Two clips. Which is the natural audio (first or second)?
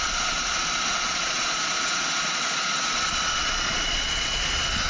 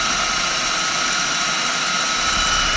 second